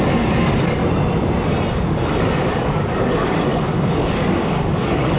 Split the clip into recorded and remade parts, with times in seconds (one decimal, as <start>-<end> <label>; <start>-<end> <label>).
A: 0.0-0.8 remade; 0.8-1.7 recorded; 1.7-5.2 remade